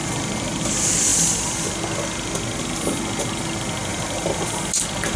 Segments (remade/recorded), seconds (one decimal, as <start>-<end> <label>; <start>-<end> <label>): 0.0-0.6 remade; 0.6-1.1 recorded; 1.1-2.6 remade; 2.6-3.9 recorded; 3.9-4.6 remade; 4.6-5.2 recorded